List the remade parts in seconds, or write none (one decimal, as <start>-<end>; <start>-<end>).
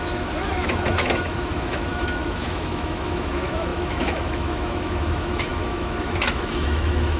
0.0-7.2